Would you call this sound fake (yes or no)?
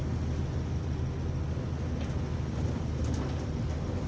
no